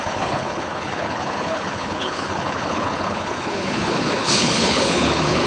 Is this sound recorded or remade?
remade